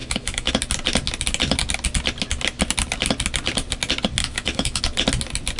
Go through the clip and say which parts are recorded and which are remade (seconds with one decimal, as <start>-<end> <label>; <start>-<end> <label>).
0.0-0.5 remade; 0.5-4.2 recorded; 4.2-4.8 remade; 4.8-5.6 recorded